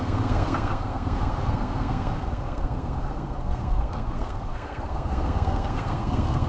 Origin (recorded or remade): remade